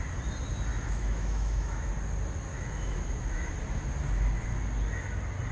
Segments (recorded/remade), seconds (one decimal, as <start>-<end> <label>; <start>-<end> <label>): 0.0-0.7 recorded; 0.7-1.9 remade; 1.9-2.5 recorded; 2.5-3.5 remade; 3.5-5.5 recorded